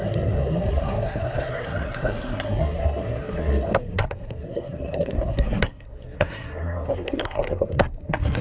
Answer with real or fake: fake